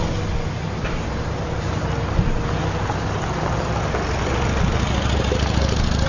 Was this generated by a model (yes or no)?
no